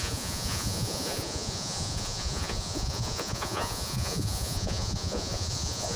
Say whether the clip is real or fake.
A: fake